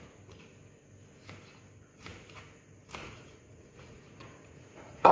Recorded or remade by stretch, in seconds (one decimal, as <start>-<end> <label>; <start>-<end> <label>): 0.0-3.0 recorded; 3.0-5.1 remade